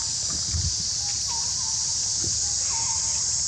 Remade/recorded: remade